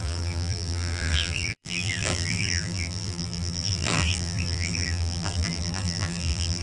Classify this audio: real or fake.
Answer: fake